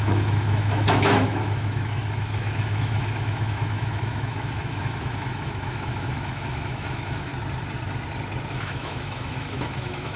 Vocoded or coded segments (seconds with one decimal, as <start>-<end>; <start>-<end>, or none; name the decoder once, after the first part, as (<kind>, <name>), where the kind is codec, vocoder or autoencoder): 0.0-7.3 (autoencoder, DAC-VAE); 8.5-10.2